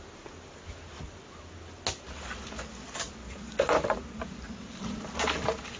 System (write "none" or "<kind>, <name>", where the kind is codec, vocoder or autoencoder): none